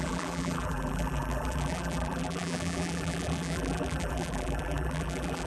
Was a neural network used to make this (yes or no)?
yes